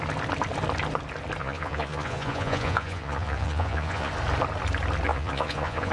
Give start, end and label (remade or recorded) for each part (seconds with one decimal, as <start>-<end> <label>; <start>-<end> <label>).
0.0-1.4 recorded; 1.4-4.1 remade; 4.1-5.1 recorded; 5.1-5.9 remade